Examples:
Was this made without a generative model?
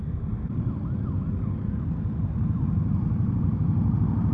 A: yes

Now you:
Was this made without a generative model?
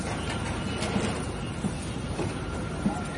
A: yes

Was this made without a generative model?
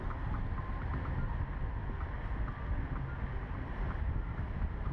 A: yes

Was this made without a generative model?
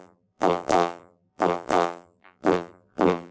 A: no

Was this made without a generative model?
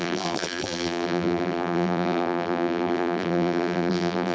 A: no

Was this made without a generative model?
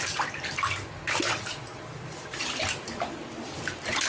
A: no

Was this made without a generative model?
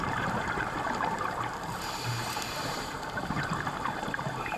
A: no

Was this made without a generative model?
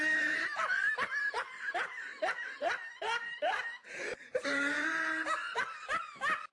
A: no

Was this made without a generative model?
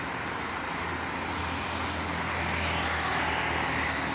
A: yes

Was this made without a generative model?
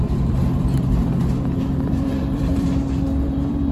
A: no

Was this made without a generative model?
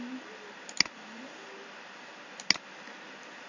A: yes